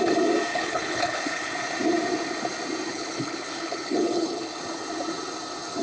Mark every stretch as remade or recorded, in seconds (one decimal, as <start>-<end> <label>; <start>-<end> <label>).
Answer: 0.0-0.5 recorded; 0.5-1.5 remade; 1.5-2.9 recorded; 2.9-4.6 remade; 4.6-5.8 recorded